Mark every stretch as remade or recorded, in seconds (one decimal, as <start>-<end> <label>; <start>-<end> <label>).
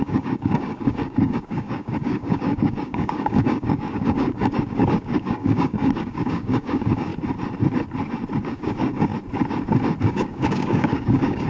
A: 0.0-7.1 remade; 7.1-8.5 recorded; 8.5-9.1 remade; 9.1-10.0 recorded; 10.0-11.5 remade